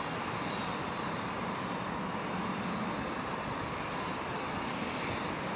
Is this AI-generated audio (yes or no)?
no